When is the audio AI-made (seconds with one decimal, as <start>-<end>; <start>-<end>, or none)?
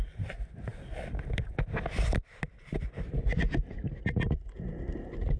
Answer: 0.0-3.3